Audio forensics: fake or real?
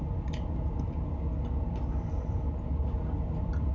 real